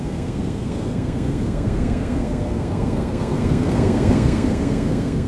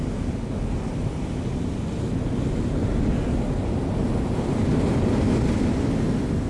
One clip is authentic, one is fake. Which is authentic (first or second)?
second